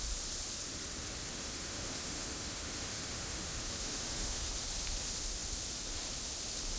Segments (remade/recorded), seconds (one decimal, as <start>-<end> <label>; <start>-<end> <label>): 0.0-1.3 recorded; 1.3-4.5 remade; 4.5-6.8 recorded

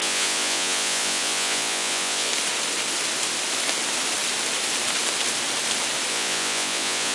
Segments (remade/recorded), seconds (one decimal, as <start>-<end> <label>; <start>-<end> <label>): 0.0-2.3 remade; 2.3-6.1 recorded; 6.1-7.1 remade